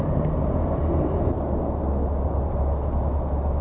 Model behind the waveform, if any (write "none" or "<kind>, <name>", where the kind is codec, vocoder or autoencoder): none